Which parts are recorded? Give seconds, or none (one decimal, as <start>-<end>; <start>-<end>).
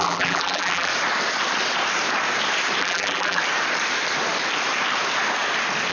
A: 0.9-2.8; 3.4-5.9